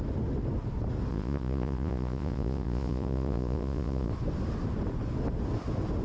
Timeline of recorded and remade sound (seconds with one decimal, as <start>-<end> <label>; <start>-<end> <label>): 0.0-1.1 recorded; 1.1-4.1 remade; 4.1-6.0 recorded